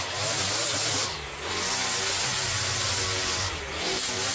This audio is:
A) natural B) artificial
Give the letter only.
A